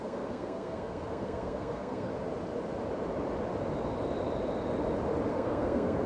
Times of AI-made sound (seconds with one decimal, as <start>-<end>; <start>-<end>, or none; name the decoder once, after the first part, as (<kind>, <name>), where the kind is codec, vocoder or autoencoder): 0.0-2.1 (codec, SNAC); 5.3-6.1